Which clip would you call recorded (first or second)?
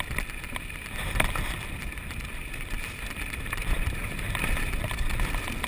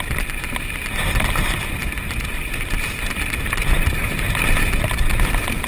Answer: second